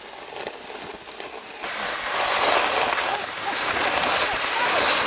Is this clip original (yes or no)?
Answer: yes